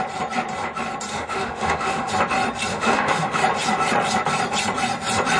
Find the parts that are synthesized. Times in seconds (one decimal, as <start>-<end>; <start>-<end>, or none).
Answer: 1.1-2.1; 2.7-3.4